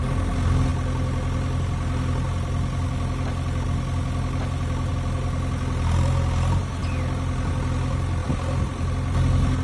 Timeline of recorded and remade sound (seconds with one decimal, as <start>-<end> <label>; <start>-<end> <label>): 0.0-9.6 recorded